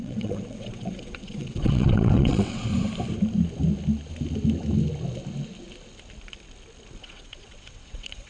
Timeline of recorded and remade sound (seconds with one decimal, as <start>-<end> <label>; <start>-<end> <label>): 0.0-2.7 remade; 2.7-7.0 recorded; 7.0-8.3 remade